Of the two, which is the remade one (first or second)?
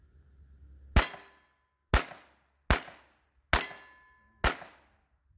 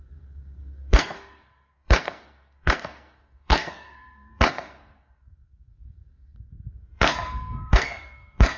second